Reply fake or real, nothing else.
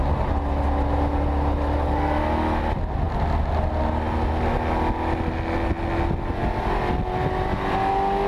real